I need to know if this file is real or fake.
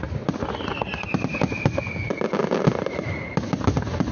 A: real